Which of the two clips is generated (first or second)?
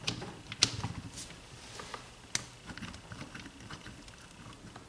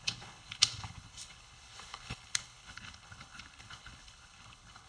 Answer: second